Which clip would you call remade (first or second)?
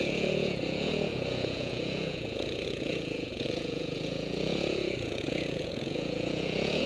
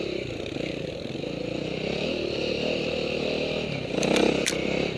first